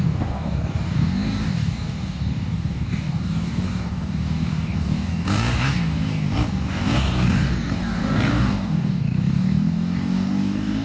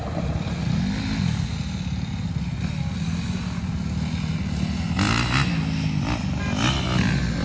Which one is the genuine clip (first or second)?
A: second